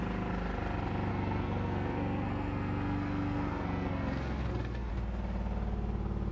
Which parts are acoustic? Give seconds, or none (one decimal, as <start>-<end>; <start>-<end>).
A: 0.0-1.1; 4.9-6.3